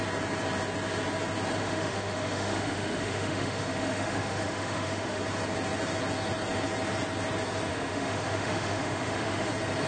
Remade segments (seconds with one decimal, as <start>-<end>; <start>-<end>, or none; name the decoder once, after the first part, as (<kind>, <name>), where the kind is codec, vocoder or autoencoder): 1.6-5.2 (autoencoder, DAC-VAE); 7.7-9.5

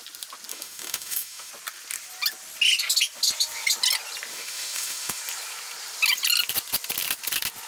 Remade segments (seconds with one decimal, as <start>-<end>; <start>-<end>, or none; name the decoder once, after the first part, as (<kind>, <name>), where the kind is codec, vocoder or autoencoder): 0.5-1.5 (autoencoder, DAC-VAE); 4.3-5.2

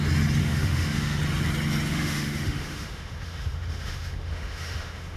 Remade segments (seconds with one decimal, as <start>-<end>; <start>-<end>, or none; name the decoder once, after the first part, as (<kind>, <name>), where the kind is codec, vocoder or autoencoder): 0.4-1.2 (autoencoder, DAC-VAE); 1.9-5.2

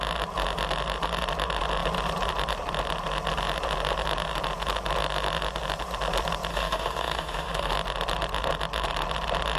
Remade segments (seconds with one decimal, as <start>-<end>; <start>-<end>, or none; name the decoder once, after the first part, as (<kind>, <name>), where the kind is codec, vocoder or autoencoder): 6.5-7.7 (autoencoder, DAC-VAE)

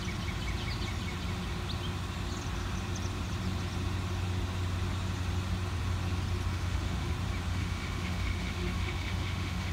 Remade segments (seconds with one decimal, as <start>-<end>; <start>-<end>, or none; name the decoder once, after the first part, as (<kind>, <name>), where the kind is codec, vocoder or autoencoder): 6.5-7.1 (autoencoder, DAC-VAE); 7.5-9.7

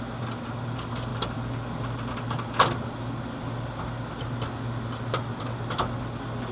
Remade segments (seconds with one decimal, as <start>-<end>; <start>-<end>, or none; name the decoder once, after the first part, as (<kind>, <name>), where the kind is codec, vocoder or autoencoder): none

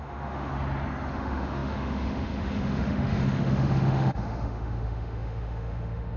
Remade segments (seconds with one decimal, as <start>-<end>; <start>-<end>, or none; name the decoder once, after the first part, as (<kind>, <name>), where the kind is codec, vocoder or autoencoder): 0.0-0.5 (autoencoder, DAC-VAE); 1.1-6.2

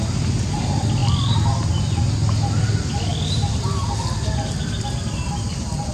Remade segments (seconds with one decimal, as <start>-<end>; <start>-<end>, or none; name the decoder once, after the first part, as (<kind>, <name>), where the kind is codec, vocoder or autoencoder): none